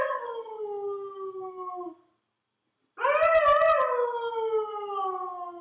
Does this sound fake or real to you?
real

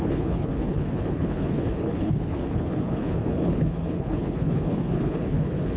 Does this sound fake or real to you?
fake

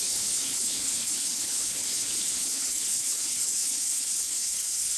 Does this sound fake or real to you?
fake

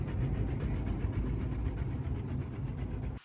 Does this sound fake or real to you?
real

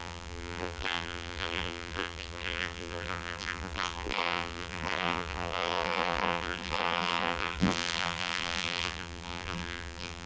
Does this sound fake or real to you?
fake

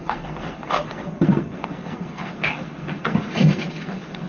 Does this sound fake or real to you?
fake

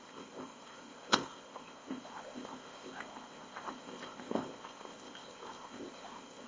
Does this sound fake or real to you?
fake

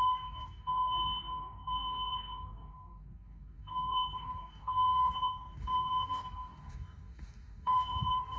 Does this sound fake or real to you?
fake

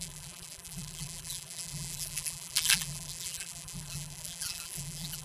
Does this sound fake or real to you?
fake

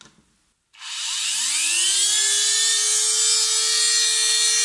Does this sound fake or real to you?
real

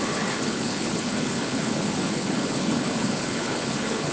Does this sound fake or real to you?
fake